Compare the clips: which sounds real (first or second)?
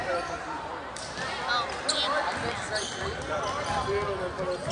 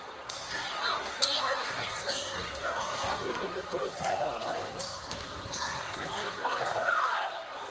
first